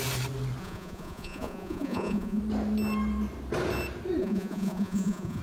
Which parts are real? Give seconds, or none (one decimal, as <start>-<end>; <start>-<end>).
0.0-0.6; 2.4-4.2

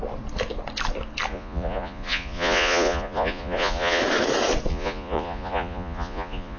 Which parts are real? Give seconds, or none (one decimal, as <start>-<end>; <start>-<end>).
0.0-1.3; 4.0-4.7

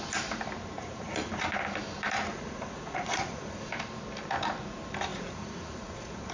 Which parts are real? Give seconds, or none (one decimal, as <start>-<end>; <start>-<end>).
0.0-0.8; 1.4-2.3; 3.7-5.1

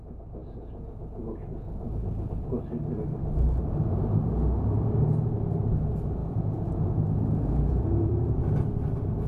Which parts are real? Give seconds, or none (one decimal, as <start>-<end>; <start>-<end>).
0.0-0.4; 2.3-6.2; 8.5-9.3